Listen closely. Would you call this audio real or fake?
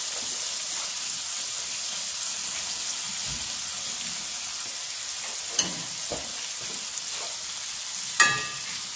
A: real